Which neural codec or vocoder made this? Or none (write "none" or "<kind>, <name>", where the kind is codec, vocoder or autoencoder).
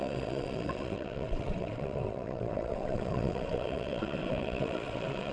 vocoder, WaveNeXt